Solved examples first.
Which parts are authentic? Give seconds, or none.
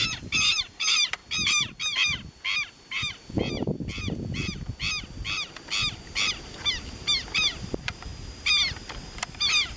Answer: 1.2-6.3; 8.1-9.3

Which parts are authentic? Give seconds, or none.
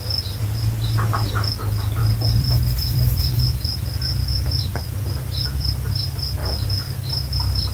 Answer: 0.0-2.0; 3.8-4.7; 5.9-6.4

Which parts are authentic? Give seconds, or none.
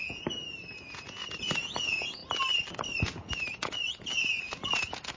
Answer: 2.2-3.0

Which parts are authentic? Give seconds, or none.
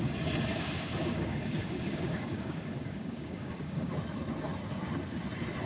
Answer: 0.0-0.5; 3.9-5.7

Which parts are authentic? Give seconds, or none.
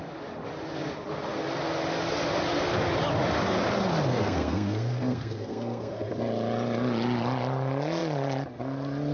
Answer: 0.0-4.1; 6.1-9.1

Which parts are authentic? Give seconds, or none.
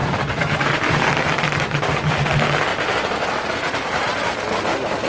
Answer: 2.1-2.7; 4.0-5.1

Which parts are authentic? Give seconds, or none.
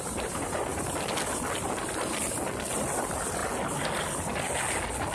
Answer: 0.0-5.1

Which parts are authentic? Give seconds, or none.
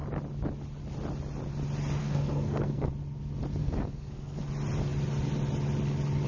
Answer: 0.0-2.0; 2.9-3.6; 4.5-6.3